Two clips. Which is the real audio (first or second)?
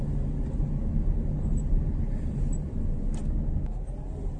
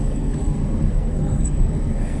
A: first